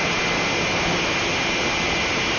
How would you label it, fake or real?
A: real